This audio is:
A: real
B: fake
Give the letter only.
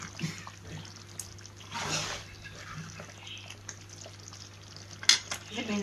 A